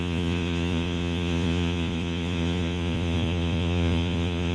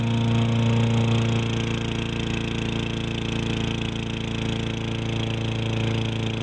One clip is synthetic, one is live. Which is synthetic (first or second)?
first